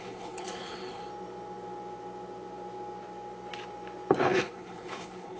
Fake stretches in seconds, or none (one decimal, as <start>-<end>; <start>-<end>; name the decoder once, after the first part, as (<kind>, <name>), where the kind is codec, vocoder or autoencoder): 0.0-1.0 (codec, HILCodec); 4.2-5.4